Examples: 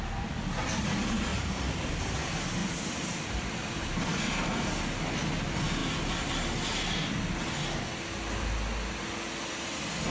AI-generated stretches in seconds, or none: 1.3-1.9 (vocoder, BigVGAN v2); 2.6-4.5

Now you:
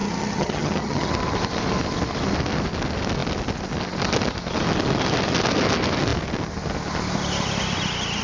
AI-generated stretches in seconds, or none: 0.0-1.1 (vocoder, HiFi-GAN)